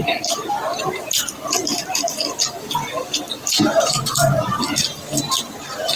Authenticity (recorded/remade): remade